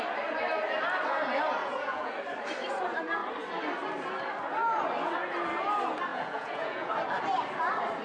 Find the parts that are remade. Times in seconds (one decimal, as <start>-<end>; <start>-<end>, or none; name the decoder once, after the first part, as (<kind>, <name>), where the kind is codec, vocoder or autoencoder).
1.6-2.1 (vocoder, Vocos); 6.1-6.9